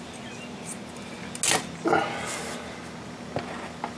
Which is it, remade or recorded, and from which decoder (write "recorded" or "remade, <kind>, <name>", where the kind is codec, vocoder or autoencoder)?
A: recorded